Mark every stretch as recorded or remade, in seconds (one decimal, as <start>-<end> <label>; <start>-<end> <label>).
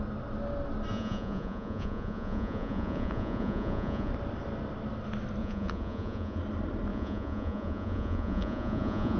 0.0-0.9 recorded; 0.9-4.1 remade; 4.1-5.4 recorded; 5.4-6.4 remade; 6.4-6.9 recorded; 6.9-9.2 remade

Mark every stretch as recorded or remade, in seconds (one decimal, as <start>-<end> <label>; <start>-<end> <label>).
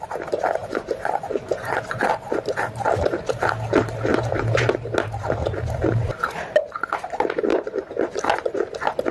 0.0-0.6 recorded; 0.6-2.0 remade; 2.0-7.5 recorded; 7.5-8.2 remade; 8.2-9.1 recorded